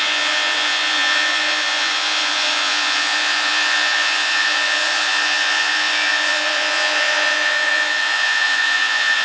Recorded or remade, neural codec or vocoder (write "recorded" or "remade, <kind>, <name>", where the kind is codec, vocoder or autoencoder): remade, vocoder, Vocos